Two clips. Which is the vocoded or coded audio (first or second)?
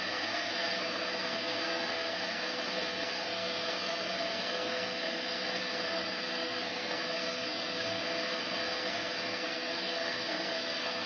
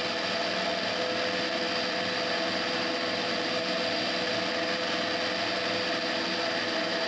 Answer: first